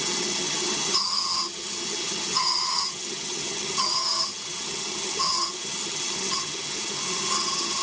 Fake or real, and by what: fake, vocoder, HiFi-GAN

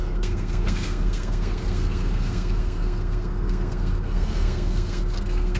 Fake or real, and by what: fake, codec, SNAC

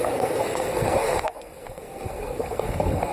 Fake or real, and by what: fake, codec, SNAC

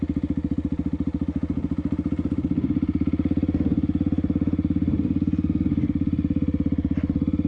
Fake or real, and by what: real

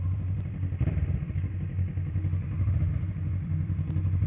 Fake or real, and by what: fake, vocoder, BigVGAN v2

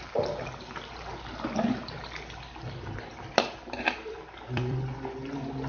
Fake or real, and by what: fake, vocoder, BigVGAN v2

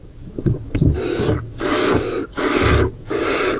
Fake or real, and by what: fake, codec, DAC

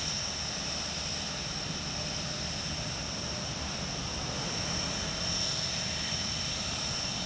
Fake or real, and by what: real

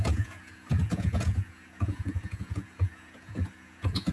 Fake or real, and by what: fake, vocoder, Vocos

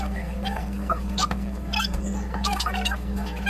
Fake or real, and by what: fake, codec, SNAC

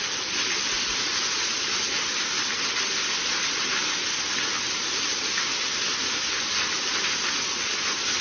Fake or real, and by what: real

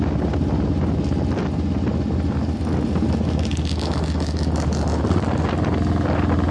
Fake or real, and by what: real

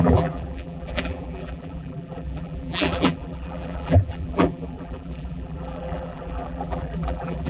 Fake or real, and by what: fake, vocoder, BigVGAN v2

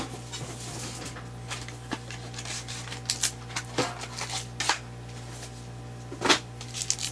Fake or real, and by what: real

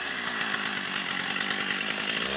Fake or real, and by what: real